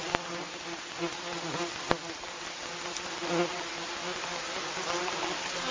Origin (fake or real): real